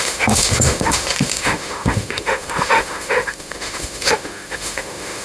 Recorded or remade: remade